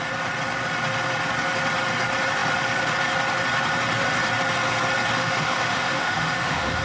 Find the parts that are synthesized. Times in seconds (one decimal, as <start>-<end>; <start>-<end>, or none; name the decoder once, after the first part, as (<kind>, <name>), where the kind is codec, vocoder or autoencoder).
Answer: 5.2-6.8 (autoencoder, DAC-VAE)